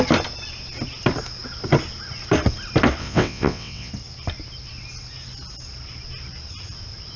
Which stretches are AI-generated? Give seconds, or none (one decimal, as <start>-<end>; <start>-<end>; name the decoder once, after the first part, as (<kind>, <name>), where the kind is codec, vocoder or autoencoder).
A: 3.0-3.9 (vocoder, WaveNeXt)